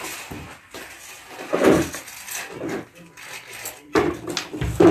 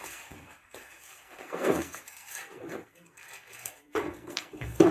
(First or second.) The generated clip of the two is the second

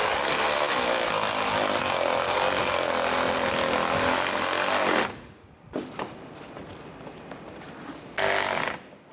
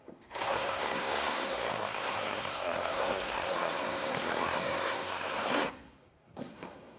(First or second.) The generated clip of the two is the second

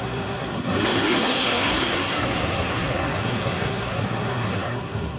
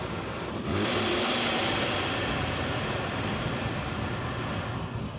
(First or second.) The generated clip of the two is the first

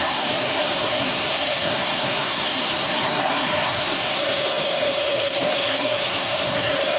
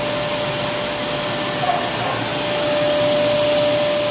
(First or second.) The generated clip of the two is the first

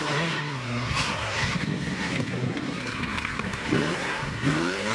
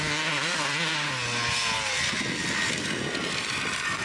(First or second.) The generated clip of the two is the first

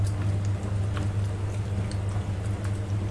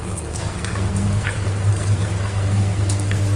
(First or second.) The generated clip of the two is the second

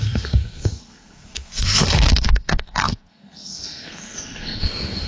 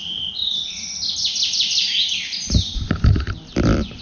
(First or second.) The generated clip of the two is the first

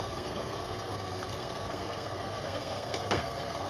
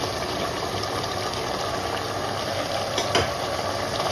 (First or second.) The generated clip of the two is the first